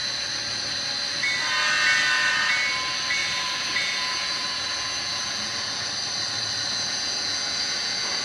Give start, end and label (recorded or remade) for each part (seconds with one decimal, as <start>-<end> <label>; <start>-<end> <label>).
0.0-3.2 recorded; 3.2-5.9 remade; 5.9-6.7 recorded; 6.7-8.2 remade